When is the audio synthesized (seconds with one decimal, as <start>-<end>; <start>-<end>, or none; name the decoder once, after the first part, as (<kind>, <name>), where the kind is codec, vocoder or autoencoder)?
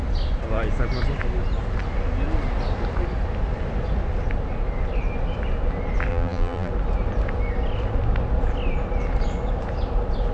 6.1-6.7 (vocoder, BigVGAN v2)